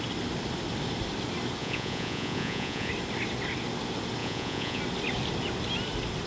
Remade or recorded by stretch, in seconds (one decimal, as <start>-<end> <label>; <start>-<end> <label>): 0.0-1.6 recorded; 1.6-2.9 remade; 2.9-4.2 recorded; 4.2-4.8 remade; 4.8-6.3 recorded